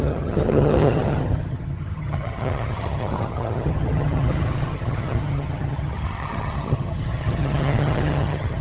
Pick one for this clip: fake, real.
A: fake